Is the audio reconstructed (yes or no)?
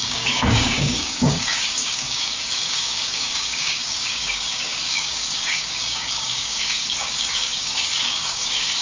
yes